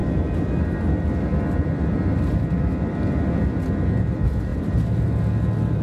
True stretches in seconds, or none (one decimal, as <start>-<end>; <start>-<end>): 0.0-4.5; 5.0-5.8